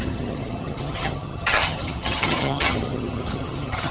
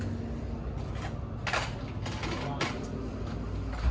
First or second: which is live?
second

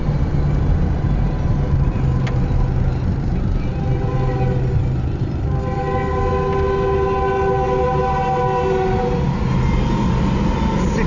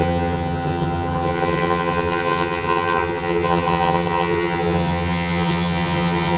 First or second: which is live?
first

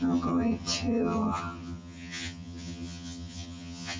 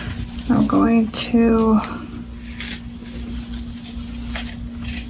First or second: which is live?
second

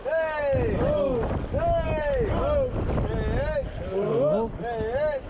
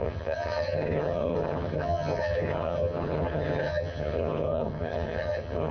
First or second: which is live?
first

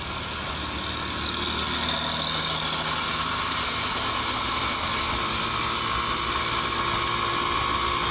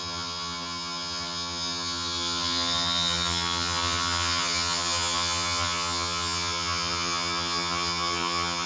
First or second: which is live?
first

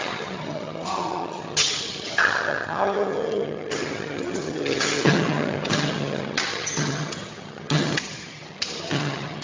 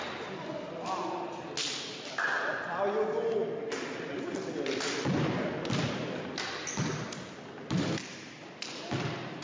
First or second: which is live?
second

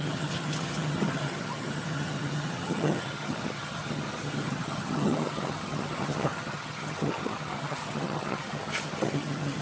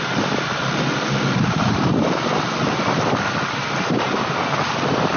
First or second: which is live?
second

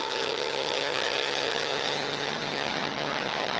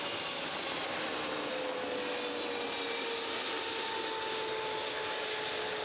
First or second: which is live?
second